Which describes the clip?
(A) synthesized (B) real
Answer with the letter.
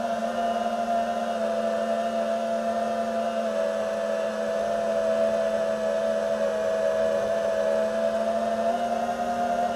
B